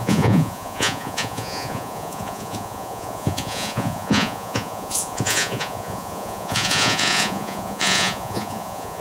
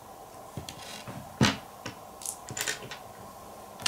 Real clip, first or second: second